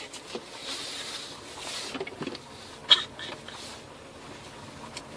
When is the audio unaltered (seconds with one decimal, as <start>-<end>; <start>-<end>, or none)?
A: 0.0-0.6; 1.4-5.2